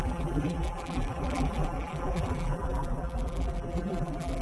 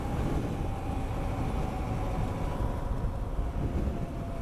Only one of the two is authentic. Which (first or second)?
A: second